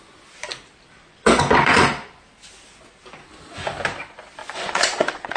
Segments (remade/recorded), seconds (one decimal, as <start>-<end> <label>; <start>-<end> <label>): 0.0-1.0 recorded; 1.0-1.9 remade; 1.9-4.4 recorded; 4.4-5.4 remade